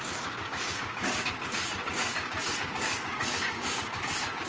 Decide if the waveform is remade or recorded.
remade